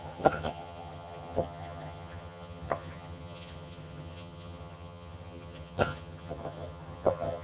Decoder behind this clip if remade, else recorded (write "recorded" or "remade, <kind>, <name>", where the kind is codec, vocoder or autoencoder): remade, vocoder, HiFi-GAN